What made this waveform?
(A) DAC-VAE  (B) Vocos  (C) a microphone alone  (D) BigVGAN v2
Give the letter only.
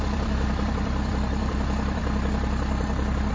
D